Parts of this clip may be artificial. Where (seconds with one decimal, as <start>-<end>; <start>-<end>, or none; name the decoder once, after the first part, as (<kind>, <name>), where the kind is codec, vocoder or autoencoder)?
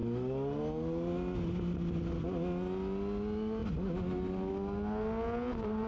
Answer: none